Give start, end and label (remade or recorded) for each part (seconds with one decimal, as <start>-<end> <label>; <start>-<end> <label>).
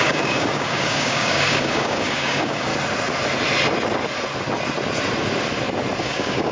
0.0-2.7 remade; 2.7-6.0 recorded; 6.0-6.5 remade